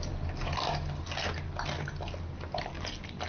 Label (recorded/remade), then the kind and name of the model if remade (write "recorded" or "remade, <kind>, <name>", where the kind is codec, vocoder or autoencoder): recorded